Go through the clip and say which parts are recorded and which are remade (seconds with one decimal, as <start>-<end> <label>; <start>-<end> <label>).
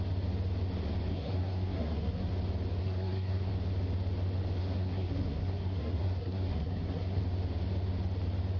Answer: 0.0-1.1 recorded; 1.1-2.3 remade; 2.3-2.8 recorded; 2.8-3.5 remade; 3.5-4.6 recorded; 4.6-7.2 remade; 7.2-8.6 recorded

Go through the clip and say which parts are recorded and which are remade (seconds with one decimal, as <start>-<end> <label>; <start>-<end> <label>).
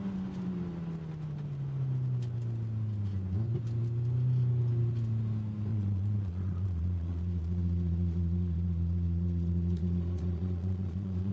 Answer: 0.0-5.7 recorded; 5.7-11.3 remade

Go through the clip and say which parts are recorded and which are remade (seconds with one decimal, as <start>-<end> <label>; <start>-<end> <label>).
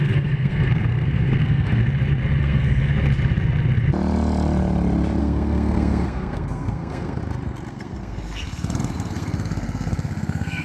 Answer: 0.0-1.8 remade; 1.8-2.4 recorded; 2.4-2.9 remade; 2.9-5.2 recorded; 5.2-7.2 remade; 7.2-7.7 recorded; 7.7-10.6 remade